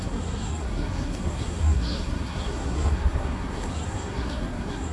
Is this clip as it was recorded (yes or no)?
no